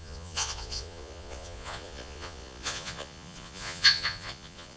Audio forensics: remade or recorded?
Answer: remade